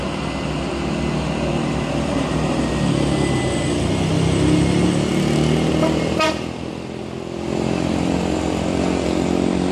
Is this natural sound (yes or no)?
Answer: yes